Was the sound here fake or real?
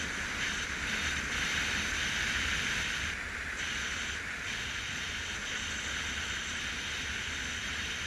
real